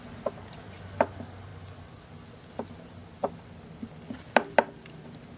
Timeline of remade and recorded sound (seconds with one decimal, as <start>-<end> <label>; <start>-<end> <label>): 0.0-5.4 recorded